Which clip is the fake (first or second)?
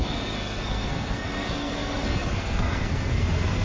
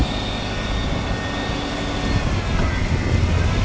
first